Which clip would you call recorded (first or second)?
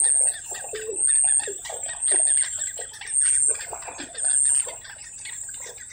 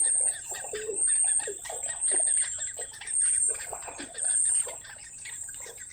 first